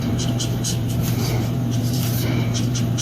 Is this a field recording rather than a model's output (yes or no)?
no